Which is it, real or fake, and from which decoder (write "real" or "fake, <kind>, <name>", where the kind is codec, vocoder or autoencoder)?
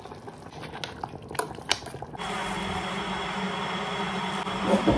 real